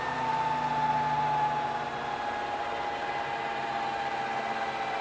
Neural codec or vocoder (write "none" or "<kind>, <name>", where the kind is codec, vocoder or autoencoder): none